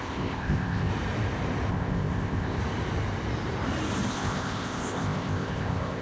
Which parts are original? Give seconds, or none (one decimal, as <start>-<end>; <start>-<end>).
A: 0.9-1.7; 2.6-4.1